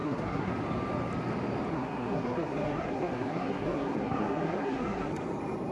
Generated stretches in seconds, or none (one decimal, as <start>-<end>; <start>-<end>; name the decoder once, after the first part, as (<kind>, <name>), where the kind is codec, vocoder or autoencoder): 0.0-0.5 (codec, SNAC); 1.7-5.1